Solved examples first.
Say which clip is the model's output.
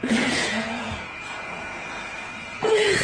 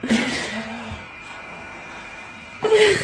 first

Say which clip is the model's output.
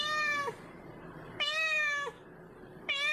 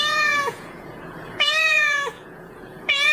second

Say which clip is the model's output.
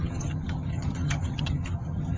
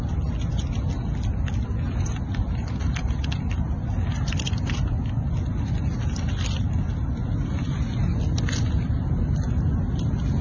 first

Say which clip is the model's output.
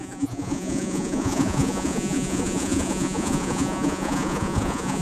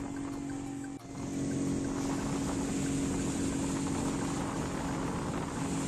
first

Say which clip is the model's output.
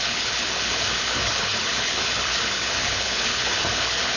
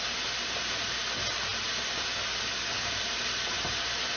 first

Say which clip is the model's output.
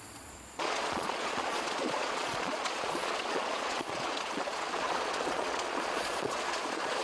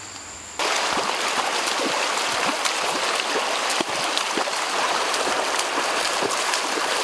first